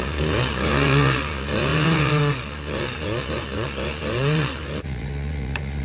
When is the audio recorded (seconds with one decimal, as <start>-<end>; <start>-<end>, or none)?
none

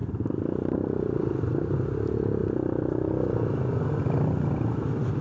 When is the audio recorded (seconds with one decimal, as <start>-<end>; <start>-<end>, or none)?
0.0-5.2

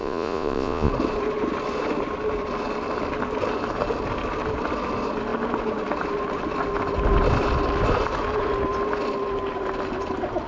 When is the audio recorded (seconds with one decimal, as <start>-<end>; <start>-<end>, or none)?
0.9-10.5

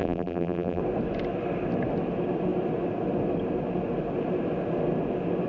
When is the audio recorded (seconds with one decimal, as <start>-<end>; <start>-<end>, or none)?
0.8-5.5

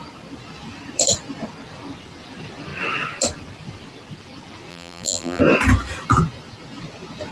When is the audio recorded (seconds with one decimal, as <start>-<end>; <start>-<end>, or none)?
0.0-4.7; 5.4-7.3

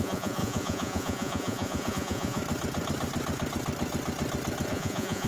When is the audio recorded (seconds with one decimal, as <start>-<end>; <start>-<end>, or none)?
2.4-4.7

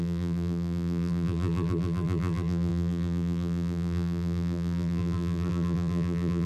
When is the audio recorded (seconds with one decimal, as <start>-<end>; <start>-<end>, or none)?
none

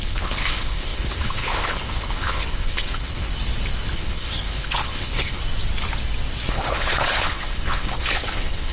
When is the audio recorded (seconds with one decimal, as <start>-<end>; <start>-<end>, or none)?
3.3-3.9; 5.4-6.5